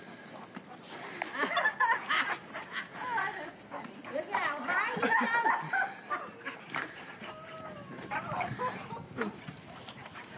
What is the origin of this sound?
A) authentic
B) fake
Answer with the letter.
A